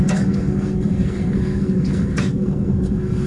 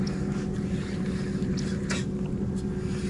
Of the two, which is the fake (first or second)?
first